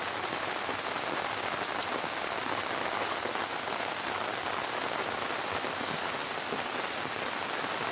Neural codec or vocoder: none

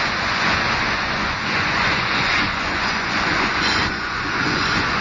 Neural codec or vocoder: vocoder, Vocos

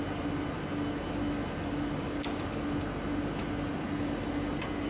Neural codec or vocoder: none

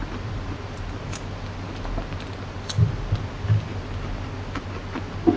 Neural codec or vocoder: none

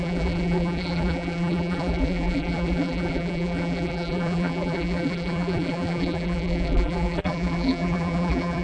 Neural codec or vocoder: vocoder, BigVGAN v2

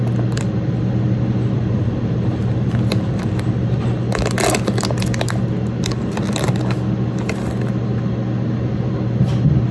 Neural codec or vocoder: none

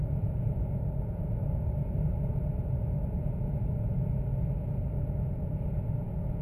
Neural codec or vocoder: vocoder, Vocos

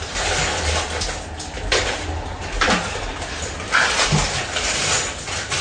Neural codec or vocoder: none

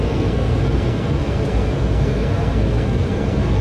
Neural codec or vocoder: codec, SNAC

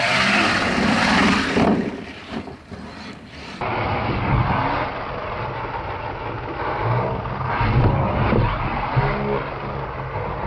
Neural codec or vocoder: none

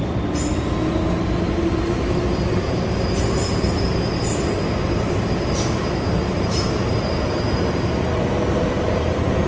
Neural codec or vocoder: none